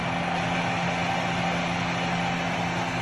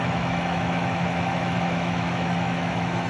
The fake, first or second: second